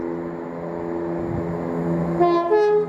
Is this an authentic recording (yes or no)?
yes